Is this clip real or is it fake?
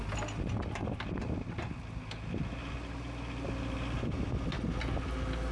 real